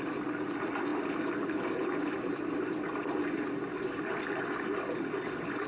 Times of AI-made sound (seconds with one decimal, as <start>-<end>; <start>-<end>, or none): none